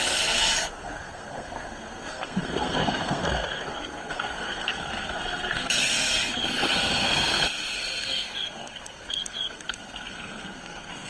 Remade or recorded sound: remade